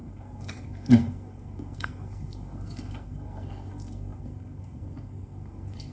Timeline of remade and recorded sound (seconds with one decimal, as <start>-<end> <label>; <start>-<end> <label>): 0.0-5.9 remade